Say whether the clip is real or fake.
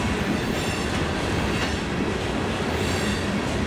real